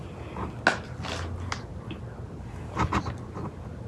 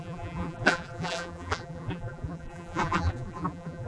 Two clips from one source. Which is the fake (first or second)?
second